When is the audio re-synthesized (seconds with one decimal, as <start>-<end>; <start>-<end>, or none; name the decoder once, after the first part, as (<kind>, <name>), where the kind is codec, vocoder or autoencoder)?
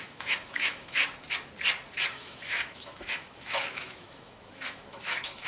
0.0-1.0 (autoencoder, DAC-VAE); 2.1-5.5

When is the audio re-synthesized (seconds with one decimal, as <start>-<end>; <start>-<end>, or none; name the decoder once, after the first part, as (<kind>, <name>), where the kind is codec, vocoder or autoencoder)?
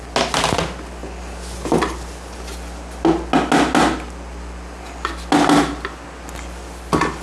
none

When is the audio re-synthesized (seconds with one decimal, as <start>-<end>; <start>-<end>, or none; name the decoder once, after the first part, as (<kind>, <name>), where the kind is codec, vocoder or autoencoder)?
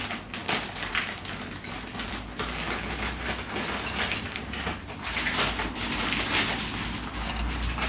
none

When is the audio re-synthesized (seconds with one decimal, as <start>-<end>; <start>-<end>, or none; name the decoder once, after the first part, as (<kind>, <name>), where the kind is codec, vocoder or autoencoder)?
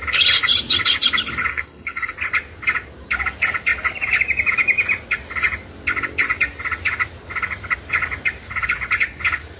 1.5-2.1 (codec, SNAC)